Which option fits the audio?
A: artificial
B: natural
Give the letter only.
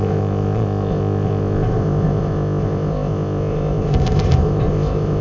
A